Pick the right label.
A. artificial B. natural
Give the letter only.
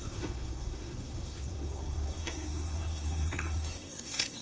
A